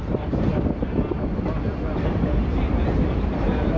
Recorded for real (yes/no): yes